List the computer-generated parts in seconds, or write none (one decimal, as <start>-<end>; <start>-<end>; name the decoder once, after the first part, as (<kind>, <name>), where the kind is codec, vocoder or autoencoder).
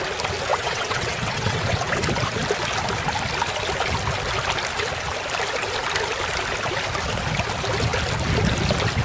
0.5-1.9 (vocoder, WaveNeXt)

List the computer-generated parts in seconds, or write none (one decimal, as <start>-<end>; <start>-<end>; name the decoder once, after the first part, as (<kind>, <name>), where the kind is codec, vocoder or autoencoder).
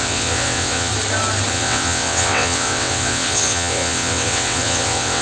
0.0-0.9 (vocoder, WaveNeXt); 1.5-5.2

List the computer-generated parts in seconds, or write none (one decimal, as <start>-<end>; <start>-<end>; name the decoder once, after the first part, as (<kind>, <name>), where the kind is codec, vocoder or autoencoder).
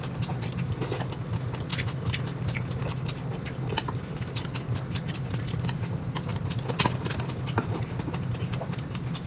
none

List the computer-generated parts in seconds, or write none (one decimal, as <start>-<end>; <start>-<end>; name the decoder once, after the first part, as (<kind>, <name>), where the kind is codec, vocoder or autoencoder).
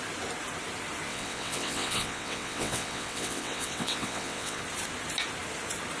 1.1-4.6 (vocoder, WaveNeXt)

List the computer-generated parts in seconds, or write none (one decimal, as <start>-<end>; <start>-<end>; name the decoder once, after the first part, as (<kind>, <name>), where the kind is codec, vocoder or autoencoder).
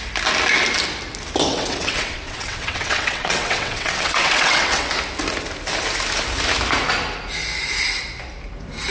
1.5-4.9 (vocoder, WaveNeXt)